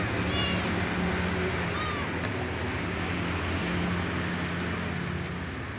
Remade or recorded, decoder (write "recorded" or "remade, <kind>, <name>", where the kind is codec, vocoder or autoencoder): recorded